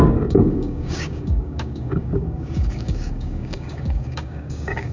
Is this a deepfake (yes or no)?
yes